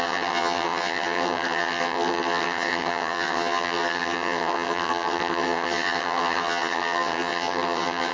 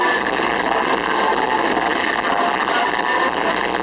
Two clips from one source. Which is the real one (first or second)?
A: second